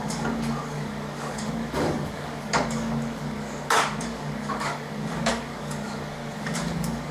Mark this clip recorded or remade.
remade